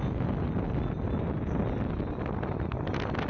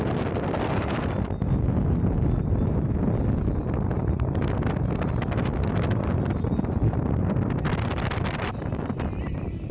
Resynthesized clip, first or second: second